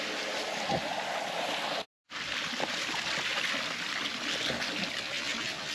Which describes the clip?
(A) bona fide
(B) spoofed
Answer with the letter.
A